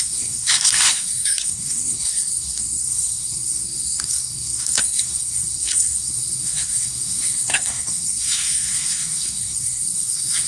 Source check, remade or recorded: remade